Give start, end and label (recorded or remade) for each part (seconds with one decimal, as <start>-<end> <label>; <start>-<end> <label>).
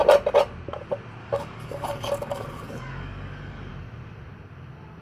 0.0-1.2 recorded; 1.2-3.7 remade; 3.7-5.0 recorded